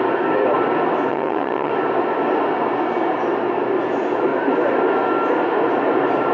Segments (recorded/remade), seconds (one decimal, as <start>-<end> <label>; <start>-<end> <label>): 0.0-1.1 recorded; 1.1-1.7 remade; 1.7-6.3 recorded